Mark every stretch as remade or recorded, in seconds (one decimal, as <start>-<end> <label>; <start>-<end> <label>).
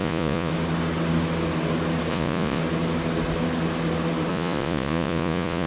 0.0-0.5 remade; 0.5-2.1 recorded; 2.1-2.6 remade; 2.6-4.3 recorded; 4.3-5.7 remade